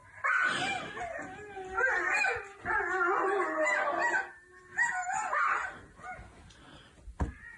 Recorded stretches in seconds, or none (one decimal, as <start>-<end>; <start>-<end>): 0.0-7.6